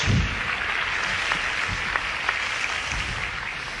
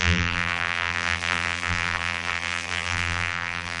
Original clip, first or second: first